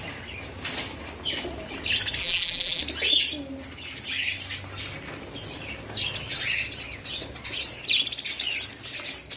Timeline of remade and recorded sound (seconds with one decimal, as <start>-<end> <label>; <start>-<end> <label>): 0.0-2.2 recorded; 2.2-2.8 remade; 2.8-9.4 recorded